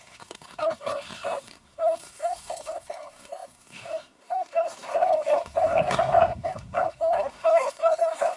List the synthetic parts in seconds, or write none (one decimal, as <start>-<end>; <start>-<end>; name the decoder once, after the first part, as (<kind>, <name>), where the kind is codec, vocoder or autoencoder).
0.0-8.4 (codec, SNAC)